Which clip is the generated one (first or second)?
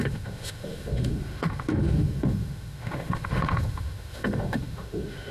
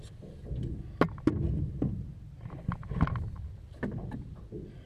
first